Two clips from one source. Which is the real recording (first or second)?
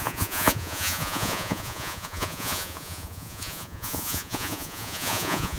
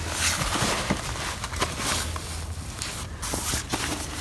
second